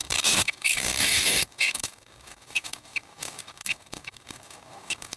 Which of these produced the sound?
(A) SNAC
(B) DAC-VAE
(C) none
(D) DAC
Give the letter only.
D